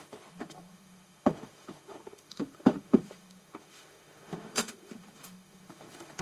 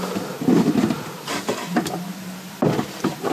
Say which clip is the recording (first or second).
second